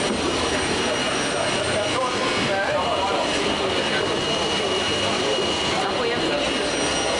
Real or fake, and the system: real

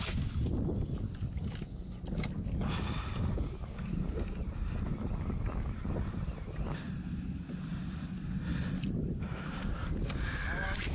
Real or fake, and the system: real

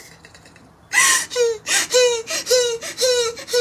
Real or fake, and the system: real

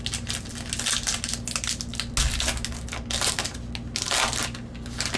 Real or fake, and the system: real